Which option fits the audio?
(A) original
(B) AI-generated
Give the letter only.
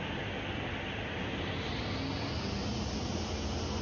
A